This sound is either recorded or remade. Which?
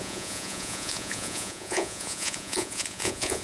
remade